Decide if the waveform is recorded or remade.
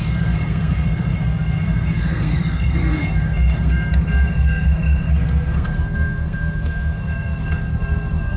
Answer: remade